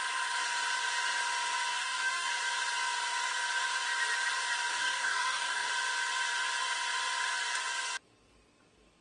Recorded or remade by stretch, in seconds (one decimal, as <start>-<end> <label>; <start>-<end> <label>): 0.0-1.7 recorded; 1.7-2.3 remade; 2.3-4.7 recorded; 4.7-5.7 remade; 5.7-9.0 recorded